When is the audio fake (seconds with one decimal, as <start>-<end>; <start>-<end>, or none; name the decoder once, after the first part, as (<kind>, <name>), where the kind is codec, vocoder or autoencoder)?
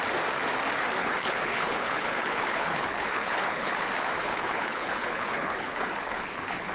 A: 1.0-3.8 (codec, HILCodec); 4.2-6.7